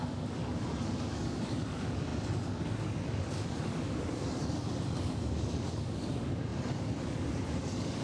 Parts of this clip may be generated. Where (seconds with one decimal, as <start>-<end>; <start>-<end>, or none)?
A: 0.0-8.0